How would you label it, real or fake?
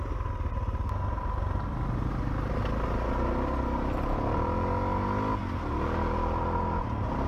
real